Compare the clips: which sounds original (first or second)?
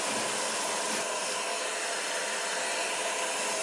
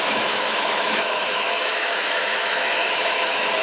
first